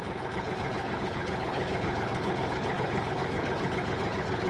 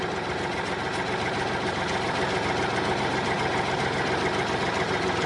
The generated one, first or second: first